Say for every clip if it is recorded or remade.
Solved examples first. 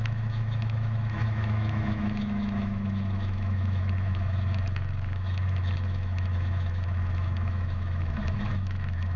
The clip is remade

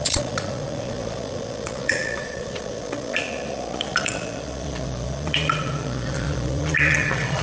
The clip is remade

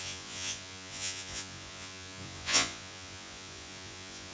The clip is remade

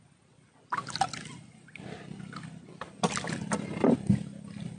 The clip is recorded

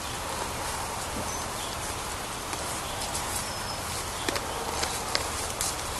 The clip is recorded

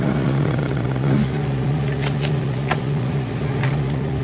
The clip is remade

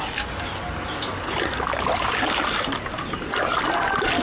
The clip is recorded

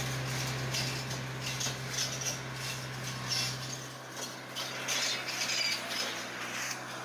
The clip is recorded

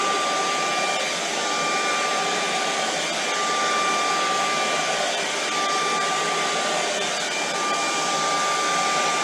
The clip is recorded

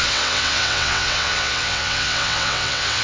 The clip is remade